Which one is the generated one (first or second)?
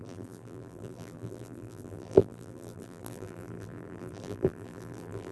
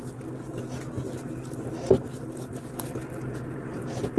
first